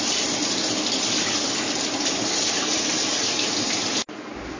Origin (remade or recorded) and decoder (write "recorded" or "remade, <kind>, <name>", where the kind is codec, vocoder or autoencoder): recorded